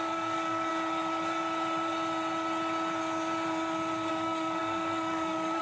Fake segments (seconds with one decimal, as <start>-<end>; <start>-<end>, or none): 0.0-0.7; 4.1-5.6